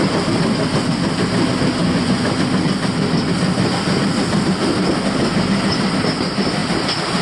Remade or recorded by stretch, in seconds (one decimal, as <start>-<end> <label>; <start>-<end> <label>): 0.0-1.8 recorded; 1.8-2.3 remade; 2.3-7.2 recorded